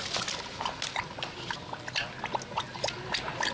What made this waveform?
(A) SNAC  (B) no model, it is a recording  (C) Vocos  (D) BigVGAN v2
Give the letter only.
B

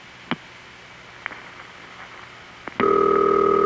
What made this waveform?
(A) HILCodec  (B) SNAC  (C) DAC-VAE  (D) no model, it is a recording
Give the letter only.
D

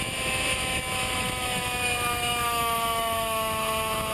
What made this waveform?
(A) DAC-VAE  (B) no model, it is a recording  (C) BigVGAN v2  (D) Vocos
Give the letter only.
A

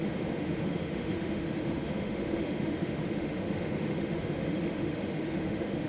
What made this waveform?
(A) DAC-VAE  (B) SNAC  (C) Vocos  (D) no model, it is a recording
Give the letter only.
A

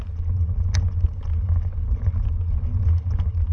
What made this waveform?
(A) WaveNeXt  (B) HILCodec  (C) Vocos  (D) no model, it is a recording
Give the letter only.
D